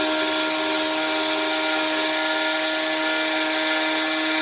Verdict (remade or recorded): recorded